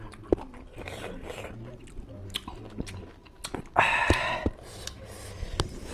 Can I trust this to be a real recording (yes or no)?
yes